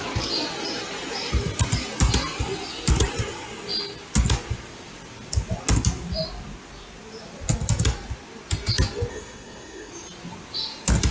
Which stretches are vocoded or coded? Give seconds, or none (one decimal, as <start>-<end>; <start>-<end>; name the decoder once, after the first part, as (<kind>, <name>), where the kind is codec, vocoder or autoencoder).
9.1-9.9 (codec, SNAC)